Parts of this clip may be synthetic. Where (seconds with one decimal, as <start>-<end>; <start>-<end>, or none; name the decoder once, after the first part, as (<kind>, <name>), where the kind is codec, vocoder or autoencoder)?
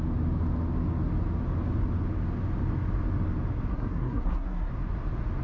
3.7-4.7 (codec, SNAC)